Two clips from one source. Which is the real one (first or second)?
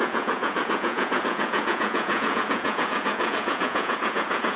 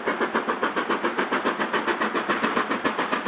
second